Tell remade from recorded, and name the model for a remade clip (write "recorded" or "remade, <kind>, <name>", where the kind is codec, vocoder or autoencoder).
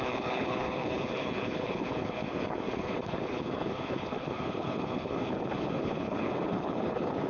remade, codec, HILCodec